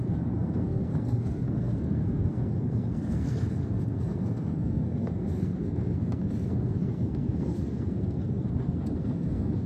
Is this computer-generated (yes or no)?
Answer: yes